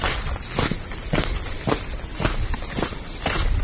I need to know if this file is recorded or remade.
recorded